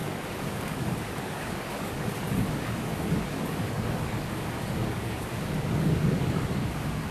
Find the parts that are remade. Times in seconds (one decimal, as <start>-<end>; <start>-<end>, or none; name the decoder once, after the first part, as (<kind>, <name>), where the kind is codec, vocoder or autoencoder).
0.0-7.1 (codec, DAC)